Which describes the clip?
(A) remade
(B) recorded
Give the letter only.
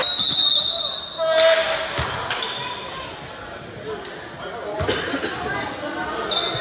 B